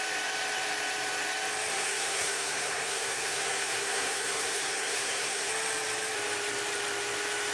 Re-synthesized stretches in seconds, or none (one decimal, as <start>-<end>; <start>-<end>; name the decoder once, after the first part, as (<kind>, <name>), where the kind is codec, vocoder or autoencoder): 1.7-5.5 (codec, SNAC)